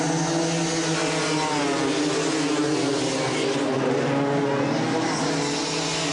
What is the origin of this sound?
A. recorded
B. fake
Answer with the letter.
A